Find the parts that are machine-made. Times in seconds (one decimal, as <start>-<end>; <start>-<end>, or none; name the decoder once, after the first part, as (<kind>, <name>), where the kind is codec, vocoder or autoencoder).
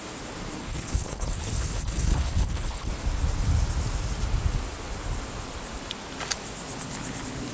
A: 0.6-2.9 (codec, HILCodec)